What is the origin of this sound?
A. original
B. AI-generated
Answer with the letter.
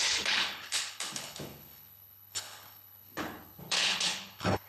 B